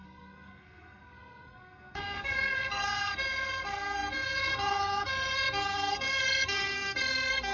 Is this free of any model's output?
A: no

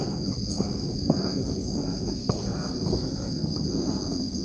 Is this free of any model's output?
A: no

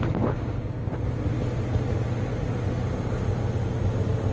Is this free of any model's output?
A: yes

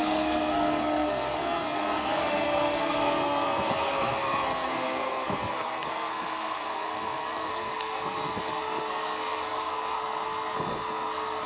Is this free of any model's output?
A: no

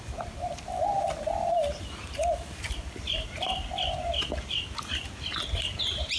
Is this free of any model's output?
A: yes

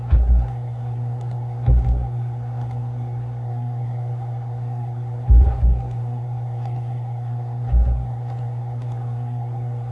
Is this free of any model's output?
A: no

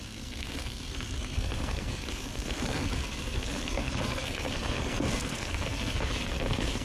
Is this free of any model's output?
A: no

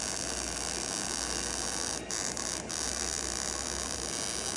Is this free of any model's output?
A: yes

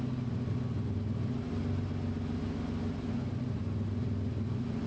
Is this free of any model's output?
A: yes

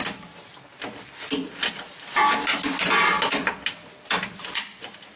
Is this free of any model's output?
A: yes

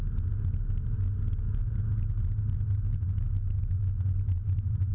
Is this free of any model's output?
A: yes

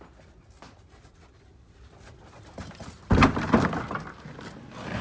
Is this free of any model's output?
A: yes